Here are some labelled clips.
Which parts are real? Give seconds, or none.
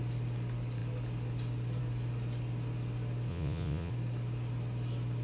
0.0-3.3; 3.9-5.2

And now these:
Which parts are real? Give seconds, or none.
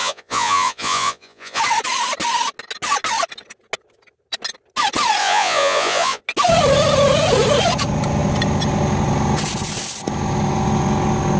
1.6-5.2; 6.2-11.4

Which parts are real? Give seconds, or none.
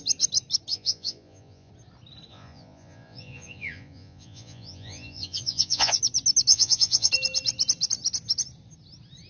0.0-0.7; 1.7-2.3; 6.0-6.5; 7.1-9.3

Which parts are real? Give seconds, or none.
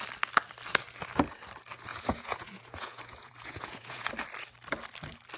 0.0-1.9; 4.1-5.4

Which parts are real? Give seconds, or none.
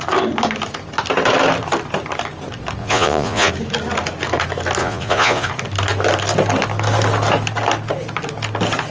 0.0-2.8; 3.5-4.8; 5.5-8.9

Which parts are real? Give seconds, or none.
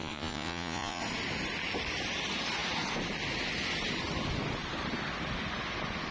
1.0-6.1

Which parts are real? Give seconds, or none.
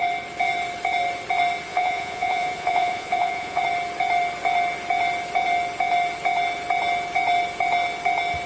0.0-1.7; 3.6-8.5